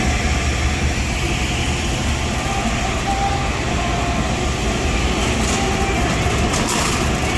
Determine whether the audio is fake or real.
real